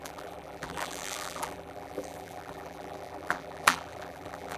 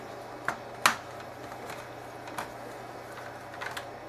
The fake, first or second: first